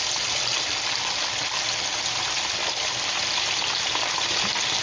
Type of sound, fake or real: real